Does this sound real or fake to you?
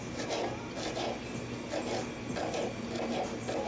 real